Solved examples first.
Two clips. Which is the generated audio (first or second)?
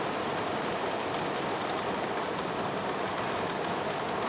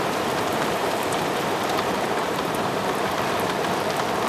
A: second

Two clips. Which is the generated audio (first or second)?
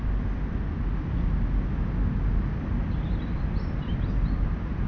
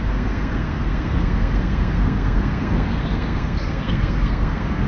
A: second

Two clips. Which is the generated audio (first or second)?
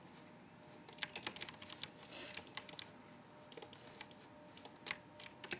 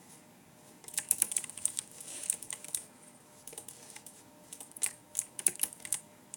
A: second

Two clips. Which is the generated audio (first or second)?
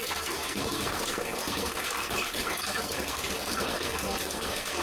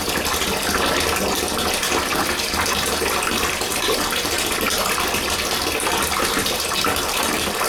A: first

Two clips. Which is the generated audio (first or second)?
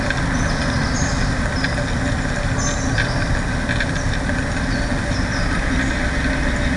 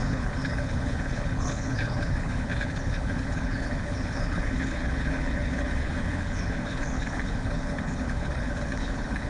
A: second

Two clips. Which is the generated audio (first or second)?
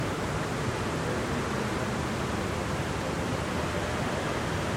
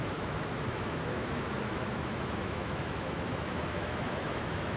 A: second